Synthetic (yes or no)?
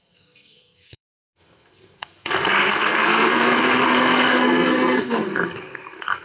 yes